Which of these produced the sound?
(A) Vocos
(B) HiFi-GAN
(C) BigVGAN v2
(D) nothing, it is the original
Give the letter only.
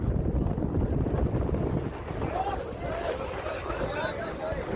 D